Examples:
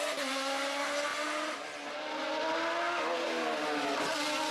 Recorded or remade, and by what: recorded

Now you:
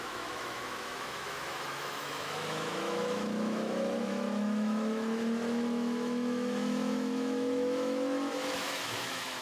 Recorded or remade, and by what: remade, autoencoder, DAC-VAE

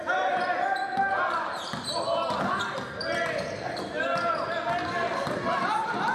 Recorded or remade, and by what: recorded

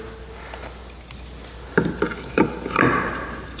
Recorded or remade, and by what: recorded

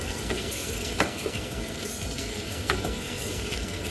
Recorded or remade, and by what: remade, codec, SNAC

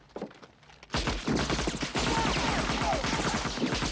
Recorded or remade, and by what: recorded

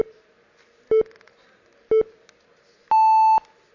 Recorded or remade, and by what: recorded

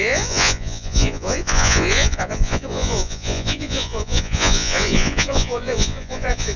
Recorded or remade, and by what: remade, vocoder, Vocos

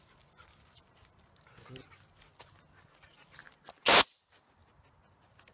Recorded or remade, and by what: recorded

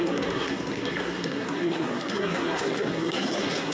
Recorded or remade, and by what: remade, codec, SNAC